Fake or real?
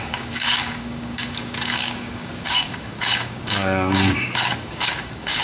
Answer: fake